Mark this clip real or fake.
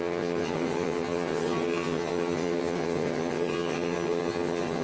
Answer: fake